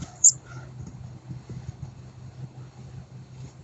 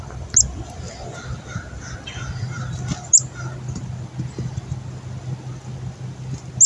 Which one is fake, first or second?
first